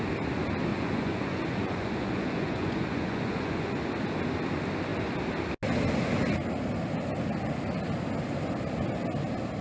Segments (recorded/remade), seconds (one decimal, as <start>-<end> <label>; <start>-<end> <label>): 0.0-0.7 recorded; 0.7-3.8 remade; 3.8-9.6 recorded